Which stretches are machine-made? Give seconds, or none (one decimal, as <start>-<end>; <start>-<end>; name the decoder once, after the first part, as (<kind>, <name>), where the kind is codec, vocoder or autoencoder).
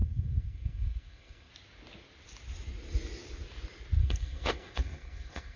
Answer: 0.0-1.5 (codec, SNAC); 4.0-5.6